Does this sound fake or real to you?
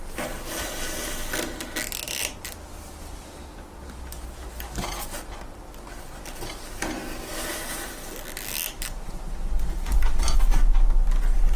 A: real